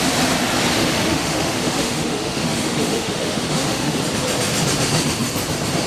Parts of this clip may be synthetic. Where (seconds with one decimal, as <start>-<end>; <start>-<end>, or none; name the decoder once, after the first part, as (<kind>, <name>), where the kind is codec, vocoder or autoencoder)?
0.7-4.0 (autoencoder, DAC-VAE)